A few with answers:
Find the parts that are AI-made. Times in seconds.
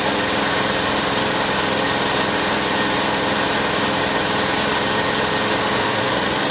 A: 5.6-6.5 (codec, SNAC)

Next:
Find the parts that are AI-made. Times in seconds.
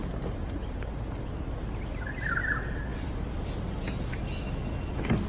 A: none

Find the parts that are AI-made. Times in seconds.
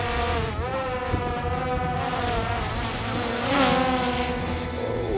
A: 0.7-3.6 (vocoder, BigVGAN v2)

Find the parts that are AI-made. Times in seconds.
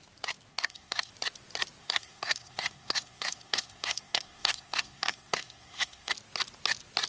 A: 0.5-1.1 (codec, SNAC); 1.8-6.1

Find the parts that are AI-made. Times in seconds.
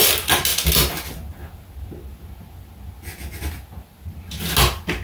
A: none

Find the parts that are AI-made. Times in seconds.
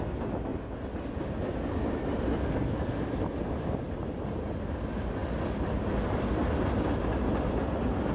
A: none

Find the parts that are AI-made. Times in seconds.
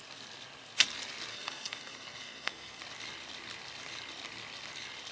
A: 1.3-2.8 (codec, SNAC)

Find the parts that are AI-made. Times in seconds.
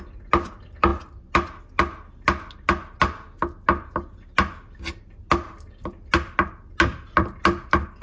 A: none